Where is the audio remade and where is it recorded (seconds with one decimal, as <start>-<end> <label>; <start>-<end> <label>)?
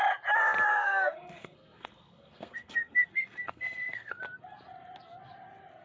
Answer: 0.0-0.7 recorded; 0.7-4.2 remade; 4.2-5.8 recorded